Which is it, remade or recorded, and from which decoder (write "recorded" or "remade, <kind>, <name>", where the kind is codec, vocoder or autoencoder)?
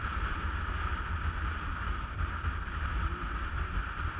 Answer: recorded